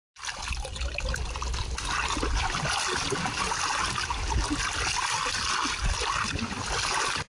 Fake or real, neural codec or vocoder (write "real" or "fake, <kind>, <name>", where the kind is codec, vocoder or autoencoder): real